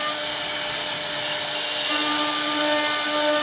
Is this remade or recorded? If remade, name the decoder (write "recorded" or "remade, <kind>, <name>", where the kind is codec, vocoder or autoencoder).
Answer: recorded